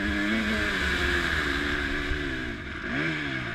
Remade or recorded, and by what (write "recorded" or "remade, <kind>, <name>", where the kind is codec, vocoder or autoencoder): recorded